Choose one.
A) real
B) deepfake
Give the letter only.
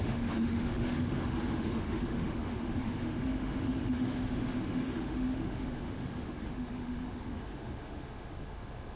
B